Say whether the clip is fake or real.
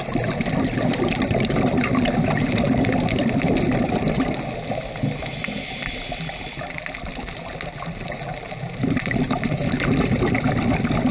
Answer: real